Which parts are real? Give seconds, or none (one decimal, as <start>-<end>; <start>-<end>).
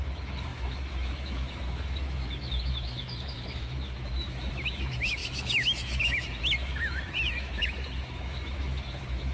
none